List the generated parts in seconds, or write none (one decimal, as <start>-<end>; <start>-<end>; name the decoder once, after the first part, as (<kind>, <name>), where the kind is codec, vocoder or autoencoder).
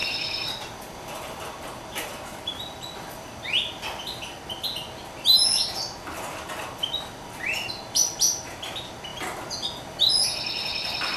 0.0-4.4 (vocoder, BigVGAN v2)